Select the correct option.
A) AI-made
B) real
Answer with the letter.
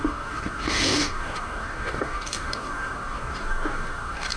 A